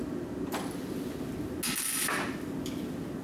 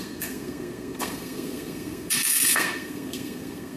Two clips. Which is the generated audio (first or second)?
second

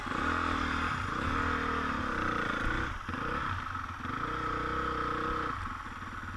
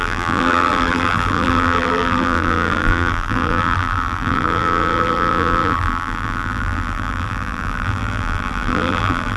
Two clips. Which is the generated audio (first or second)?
second